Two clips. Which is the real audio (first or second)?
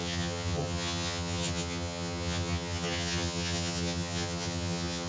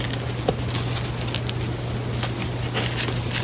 second